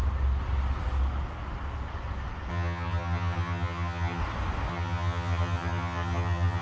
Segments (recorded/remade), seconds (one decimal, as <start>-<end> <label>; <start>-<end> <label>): 0.0-2.5 recorded; 2.5-4.2 remade; 4.2-4.7 recorded; 4.7-6.6 remade